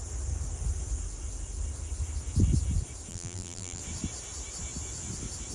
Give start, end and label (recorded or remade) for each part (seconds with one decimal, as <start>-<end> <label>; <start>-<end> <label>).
0.0-3.1 recorded; 3.1-3.8 remade; 3.8-5.5 recorded